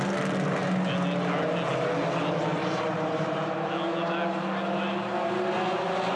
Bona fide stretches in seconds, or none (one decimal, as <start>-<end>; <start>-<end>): 0.0-2.5; 3.7-6.2